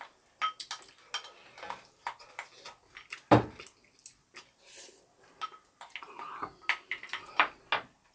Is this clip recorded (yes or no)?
yes